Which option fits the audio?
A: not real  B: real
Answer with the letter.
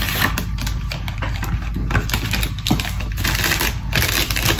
B